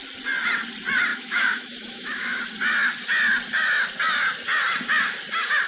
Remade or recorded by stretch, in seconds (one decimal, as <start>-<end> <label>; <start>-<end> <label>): 0.0-1.1 recorded; 1.1-2.4 remade; 2.4-5.7 recorded